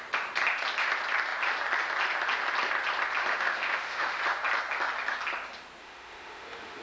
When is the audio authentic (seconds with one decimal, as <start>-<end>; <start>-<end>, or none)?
0.0-3.3; 4.2-5.8